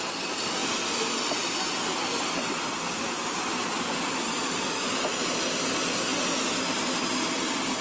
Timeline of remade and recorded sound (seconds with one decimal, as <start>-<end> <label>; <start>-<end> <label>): 0.0-7.8 recorded